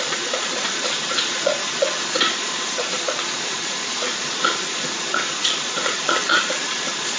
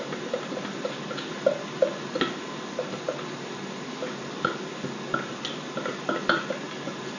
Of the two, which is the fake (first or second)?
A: first